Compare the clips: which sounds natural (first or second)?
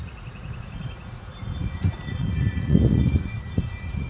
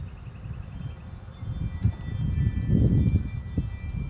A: second